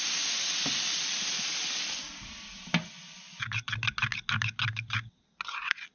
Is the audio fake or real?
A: real